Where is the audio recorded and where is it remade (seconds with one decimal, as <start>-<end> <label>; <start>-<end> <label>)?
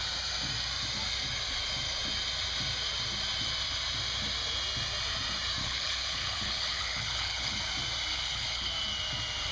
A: 0.0-5.6 recorded; 5.6-7.6 remade; 7.6-8.1 recorded; 8.1-8.7 remade; 8.7-9.5 recorded